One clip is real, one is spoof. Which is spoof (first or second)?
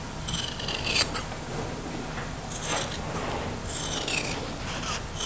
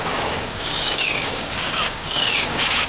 second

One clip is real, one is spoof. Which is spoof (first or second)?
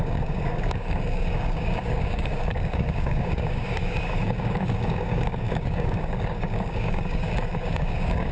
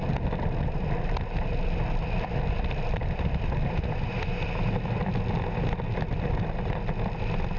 first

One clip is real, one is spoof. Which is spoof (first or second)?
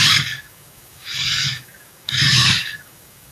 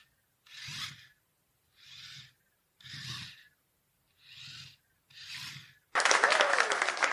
first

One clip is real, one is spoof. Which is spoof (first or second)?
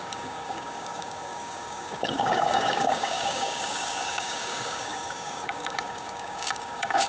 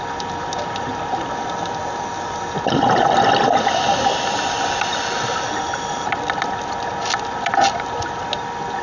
first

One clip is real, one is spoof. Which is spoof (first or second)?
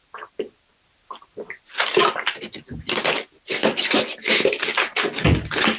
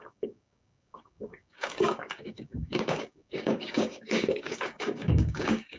second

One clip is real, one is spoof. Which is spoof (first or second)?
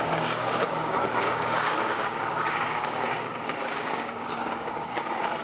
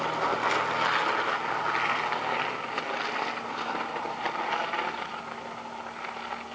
first